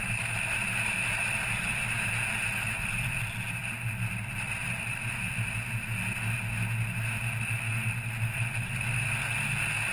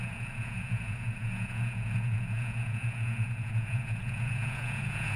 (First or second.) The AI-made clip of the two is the second